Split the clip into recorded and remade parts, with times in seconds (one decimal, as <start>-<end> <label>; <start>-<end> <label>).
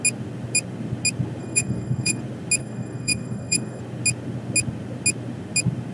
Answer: 0.0-1.4 recorded; 1.4-2.2 remade; 2.2-2.6 recorded; 2.6-3.8 remade; 3.8-5.9 recorded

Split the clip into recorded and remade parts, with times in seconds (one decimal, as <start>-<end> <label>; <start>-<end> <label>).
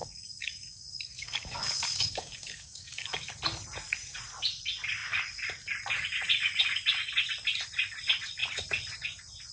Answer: 0.0-3.3 remade; 3.3-9.5 recorded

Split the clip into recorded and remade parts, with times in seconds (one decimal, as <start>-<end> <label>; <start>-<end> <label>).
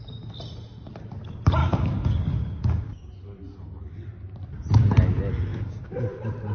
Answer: 0.0-1.6 recorded; 1.6-3.1 remade; 3.1-5.5 recorded; 5.5-6.0 remade; 6.0-6.5 recorded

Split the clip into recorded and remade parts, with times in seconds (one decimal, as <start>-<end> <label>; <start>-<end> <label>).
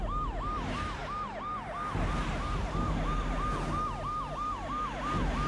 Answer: 0.0-5.5 recorded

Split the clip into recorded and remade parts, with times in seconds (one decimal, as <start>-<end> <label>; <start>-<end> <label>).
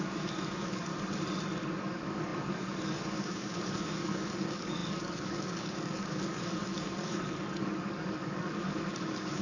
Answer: 0.0-0.9 remade; 0.9-1.8 recorded; 1.8-9.4 remade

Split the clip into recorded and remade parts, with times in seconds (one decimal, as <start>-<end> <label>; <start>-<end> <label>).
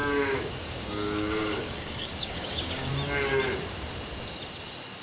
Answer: 0.0-2.9 remade; 2.9-5.0 recorded